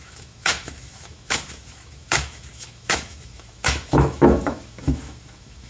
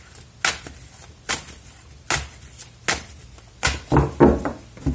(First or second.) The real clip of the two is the second